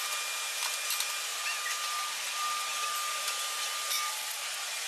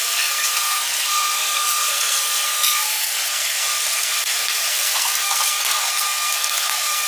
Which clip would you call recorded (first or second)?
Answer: first